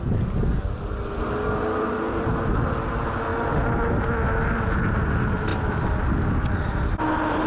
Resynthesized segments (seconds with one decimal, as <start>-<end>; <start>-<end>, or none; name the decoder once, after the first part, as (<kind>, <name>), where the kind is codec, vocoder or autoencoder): none

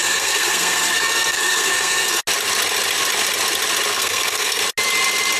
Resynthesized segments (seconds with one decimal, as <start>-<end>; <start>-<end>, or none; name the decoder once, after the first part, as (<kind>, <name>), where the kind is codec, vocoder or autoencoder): 0.0-2.2 (codec, SNAC); 3.9-4.6

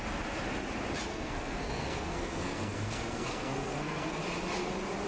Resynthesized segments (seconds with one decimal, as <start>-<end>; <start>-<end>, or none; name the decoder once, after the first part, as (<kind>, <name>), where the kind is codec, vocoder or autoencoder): 1.1-4.2 (codec, SNAC)

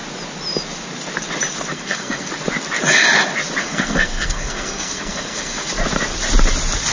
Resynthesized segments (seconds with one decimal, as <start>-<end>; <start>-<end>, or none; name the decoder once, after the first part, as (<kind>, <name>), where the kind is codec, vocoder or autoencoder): 1.7-2.3 (codec, SNAC); 3.6-5.7

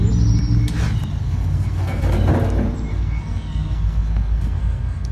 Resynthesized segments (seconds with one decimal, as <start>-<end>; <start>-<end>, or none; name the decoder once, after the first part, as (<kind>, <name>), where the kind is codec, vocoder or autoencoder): 1.2-2.0 (codec, SNAC); 2.9-5.1

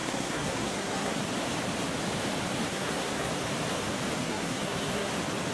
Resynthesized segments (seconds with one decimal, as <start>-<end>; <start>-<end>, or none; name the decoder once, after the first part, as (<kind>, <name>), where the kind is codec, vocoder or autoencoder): 0.0-1.2 (codec, SNAC); 2.7-3.3; 4.2-5.1